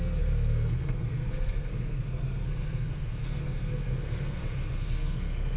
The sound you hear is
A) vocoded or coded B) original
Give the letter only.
A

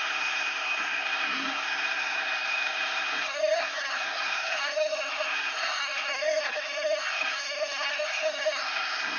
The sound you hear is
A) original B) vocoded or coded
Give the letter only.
B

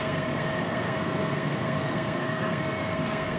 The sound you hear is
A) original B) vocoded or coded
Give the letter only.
B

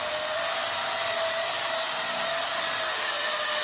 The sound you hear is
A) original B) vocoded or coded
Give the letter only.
A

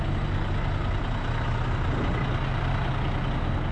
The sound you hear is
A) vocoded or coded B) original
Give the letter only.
B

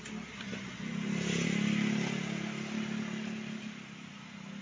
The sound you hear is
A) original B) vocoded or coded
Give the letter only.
A